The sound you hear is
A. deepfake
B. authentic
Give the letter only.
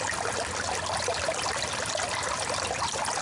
B